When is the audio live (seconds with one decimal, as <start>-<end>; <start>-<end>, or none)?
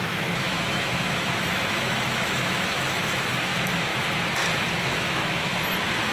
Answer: 3.9-4.8; 5.5-6.1